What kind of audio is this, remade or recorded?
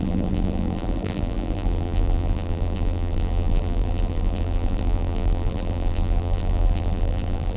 remade